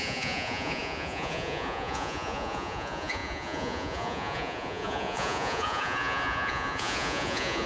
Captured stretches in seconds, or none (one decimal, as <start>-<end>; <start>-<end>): none